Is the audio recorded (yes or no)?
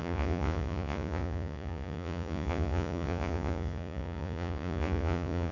no